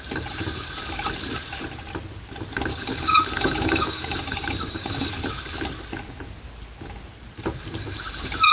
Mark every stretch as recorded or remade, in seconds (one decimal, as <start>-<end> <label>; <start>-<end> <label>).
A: 0.0-2.7 recorded; 2.7-5.1 remade; 5.1-8.5 recorded